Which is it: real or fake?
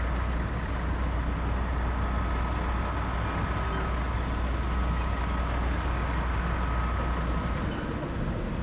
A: real